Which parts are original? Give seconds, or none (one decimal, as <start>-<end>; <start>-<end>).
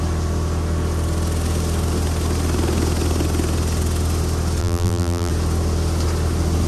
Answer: 0.0-4.6; 5.3-6.7